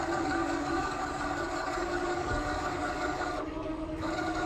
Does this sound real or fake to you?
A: fake